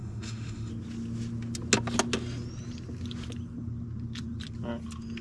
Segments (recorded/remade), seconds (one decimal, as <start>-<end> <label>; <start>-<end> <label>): 0.0-0.7 remade; 0.7-5.2 recorded

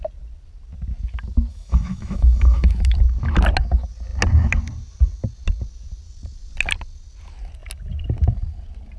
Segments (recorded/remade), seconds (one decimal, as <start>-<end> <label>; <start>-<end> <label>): 0.0-1.5 recorded; 1.5-3.0 remade; 3.0-9.0 recorded

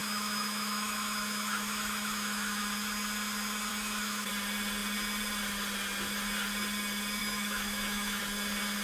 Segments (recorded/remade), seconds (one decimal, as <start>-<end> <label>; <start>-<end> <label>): 0.0-2.6 remade; 2.6-3.7 recorded; 3.7-4.3 remade; 4.3-7.2 recorded; 7.2-8.2 remade; 8.2-8.8 recorded

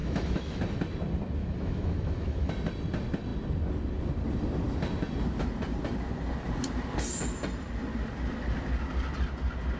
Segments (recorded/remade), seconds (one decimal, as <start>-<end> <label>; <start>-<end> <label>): 0.0-0.6 remade; 0.6-1.4 recorded; 1.4-2.5 remade; 2.5-9.8 recorded

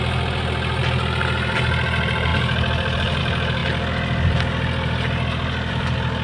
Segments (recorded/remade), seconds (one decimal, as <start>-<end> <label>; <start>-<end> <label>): 0.0-6.2 recorded

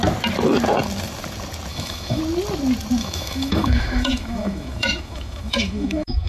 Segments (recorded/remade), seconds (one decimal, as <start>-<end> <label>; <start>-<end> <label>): 0.0-1.7 recorded; 1.7-2.2 remade; 2.2-3.0 recorded; 3.0-6.3 remade